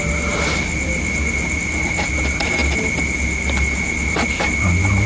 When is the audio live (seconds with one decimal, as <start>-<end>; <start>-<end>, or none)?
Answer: 0.0-5.1